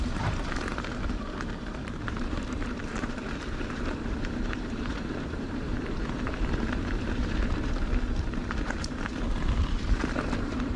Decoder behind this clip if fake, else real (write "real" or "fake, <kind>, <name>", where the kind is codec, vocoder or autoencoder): fake, vocoder, BigVGAN v2